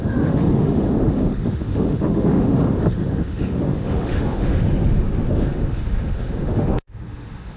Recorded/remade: remade